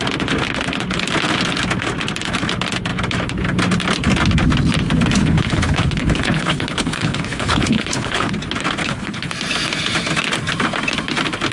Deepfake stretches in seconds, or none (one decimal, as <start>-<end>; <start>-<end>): 5.2-8.3; 8.8-9.3